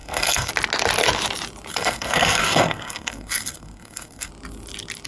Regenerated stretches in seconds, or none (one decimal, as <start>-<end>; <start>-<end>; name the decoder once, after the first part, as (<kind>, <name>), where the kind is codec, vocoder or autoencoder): 0.0-0.5 (codec, SNAC); 1.7-4.3